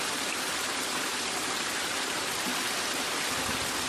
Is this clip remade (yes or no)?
no